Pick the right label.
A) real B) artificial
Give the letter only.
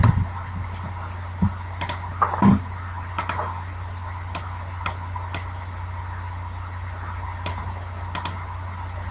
A